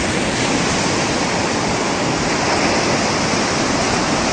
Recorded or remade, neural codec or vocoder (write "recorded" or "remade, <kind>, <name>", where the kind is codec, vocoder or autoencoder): recorded